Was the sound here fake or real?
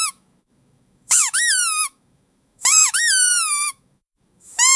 fake